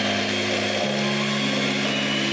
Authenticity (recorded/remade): recorded